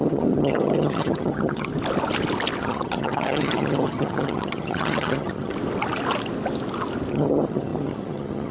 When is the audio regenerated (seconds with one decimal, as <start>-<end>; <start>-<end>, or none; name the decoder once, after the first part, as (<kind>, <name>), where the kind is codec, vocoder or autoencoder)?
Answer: 0.0-1.7 (vocoder, HiFi-GAN); 2.6-5.5; 7.1-8.5

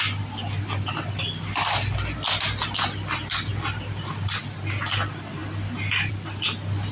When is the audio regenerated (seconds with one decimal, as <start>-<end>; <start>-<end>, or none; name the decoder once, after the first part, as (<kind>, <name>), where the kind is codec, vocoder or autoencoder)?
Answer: none

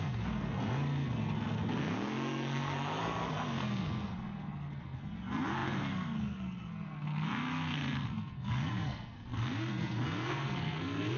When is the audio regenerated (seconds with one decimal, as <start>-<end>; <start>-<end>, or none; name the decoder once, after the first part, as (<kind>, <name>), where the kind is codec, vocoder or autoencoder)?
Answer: 0.0-11.2 (codec, SNAC)

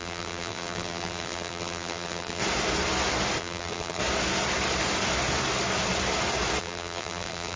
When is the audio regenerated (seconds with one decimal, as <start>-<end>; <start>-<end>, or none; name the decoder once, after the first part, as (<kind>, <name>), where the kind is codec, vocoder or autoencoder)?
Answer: 0.0-2.4 (vocoder, BigVGAN v2); 3.4-4.0; 6.6-7.6